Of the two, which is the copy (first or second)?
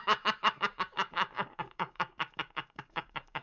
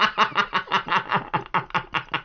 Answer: first